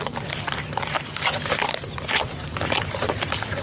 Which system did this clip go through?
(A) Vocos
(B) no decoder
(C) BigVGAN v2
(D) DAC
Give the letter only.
C